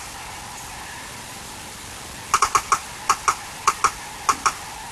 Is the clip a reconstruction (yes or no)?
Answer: no